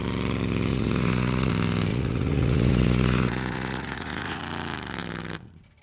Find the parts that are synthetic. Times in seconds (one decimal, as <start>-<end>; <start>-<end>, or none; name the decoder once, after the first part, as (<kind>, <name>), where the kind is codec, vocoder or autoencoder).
0.7-1.5 (vocoder, Vocos); 1.9-4.4